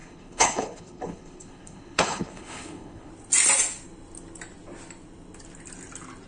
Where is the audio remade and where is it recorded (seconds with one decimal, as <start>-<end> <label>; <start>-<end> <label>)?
0.0-3.1 remade; 3.1-6.3 recorded